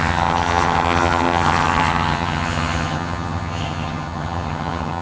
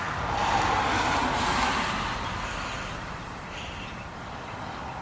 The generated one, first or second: first